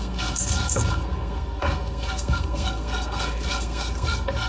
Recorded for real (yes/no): no